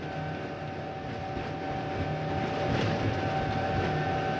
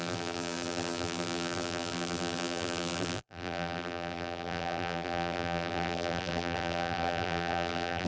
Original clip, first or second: first